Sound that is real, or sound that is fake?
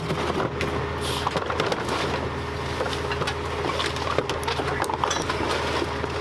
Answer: real